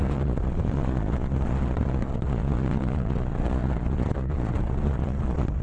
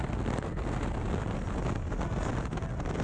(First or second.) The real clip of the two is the second